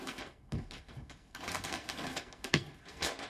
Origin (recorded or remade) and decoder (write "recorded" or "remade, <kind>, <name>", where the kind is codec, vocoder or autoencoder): remade, codec, SNAC